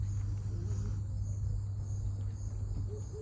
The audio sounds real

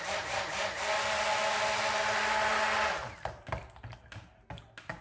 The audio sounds real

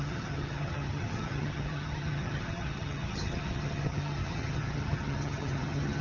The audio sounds fake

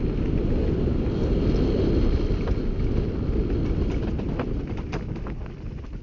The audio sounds real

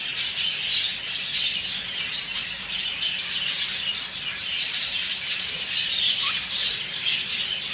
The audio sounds real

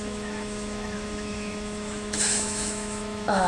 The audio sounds fake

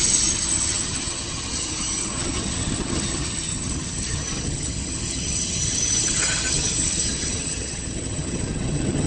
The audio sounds fake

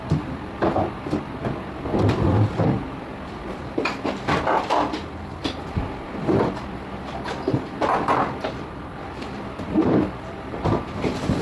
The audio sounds fake